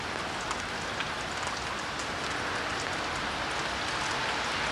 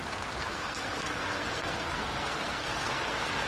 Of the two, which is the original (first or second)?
first